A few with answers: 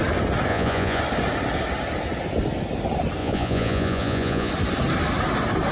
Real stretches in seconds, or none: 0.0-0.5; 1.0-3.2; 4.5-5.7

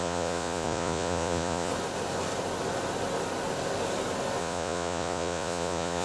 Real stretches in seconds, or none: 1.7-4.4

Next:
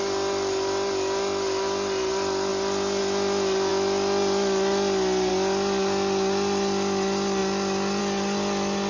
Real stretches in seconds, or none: 0.0-8.9

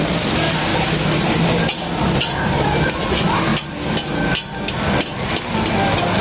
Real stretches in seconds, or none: 0.0-6.2

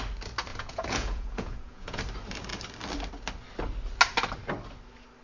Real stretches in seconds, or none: 0.0-0.5; 2.0-5.2

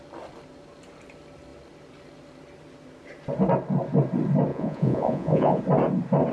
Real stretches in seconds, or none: 0.0-4.5; 5.6-6.3

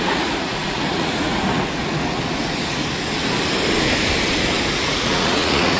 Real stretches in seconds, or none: 2.8-4.8

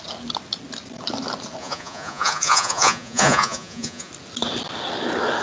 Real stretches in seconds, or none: 0.0-1.6; 4.1-5.4